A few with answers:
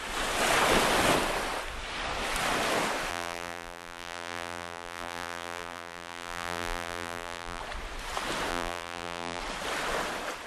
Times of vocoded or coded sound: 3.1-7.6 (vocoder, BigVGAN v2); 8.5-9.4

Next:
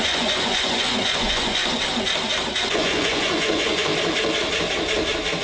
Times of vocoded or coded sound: 0.0-1.6 (vocoder, Vocos); 2.6-3.9

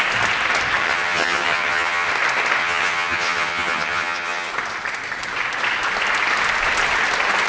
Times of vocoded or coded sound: 0.8-2.1 (vocoder, HiFi-GAN); 2.6-4.5

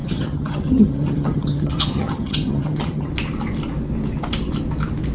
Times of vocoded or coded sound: 0.0-3.1 (vocoder, HiFi-GAN)